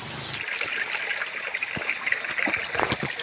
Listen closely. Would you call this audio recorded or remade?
recorded